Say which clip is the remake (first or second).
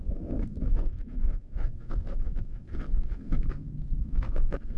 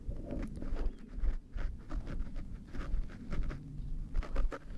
first